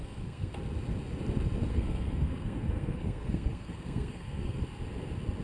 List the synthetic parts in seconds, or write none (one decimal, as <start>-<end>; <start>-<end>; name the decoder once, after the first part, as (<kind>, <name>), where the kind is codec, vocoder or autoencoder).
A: 0.0-0.5 (codec, SNAC); 1.7-4.6